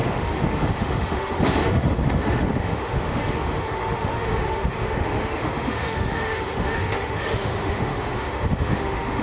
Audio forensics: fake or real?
fake